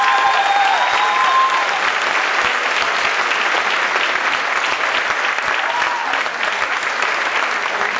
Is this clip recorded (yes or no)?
yes